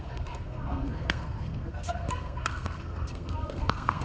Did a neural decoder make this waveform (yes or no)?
yes